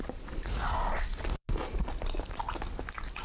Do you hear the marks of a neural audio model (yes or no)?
no